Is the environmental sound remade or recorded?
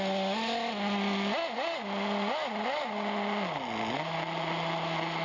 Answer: recorded